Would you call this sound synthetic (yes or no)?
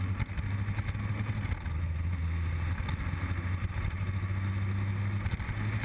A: no